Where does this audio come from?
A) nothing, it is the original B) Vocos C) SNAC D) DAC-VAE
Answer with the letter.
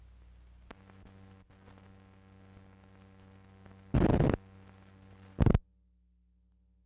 A